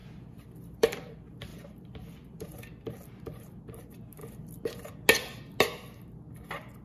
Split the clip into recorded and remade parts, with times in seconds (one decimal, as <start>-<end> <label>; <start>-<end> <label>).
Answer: 0.0-1.1 remade; 1.1-1.5 recorded; 1.5-3.6 remade; 3.6-6.8 recorded